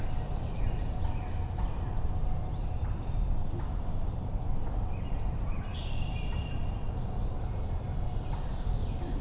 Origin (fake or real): real